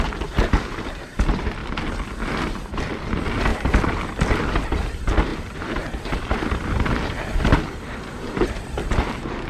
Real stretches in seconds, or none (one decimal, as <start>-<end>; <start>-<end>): 0.0-3.5; 4.3-5.3; 8.5-9.5

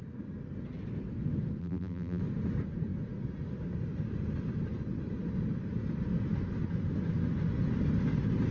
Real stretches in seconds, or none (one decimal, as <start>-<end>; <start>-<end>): 0.0-1.6; 2.2-8.5

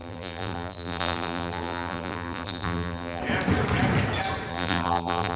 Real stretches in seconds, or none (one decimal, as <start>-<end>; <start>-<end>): 3.2-4.5

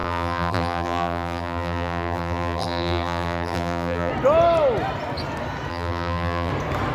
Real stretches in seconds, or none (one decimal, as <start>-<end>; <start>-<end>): 4.1-5.7; 6.5-6.9